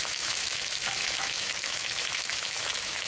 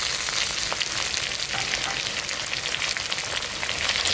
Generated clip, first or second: first